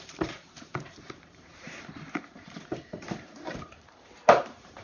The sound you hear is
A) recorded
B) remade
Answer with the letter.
B